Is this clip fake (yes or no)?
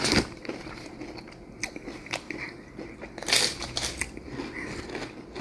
no